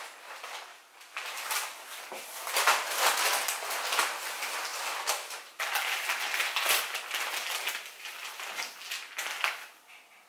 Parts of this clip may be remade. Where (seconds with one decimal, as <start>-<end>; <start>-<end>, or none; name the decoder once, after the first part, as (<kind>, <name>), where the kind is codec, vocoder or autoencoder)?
0.7-1.5 (vocoder, BigVGAN v2); 4.7-5.6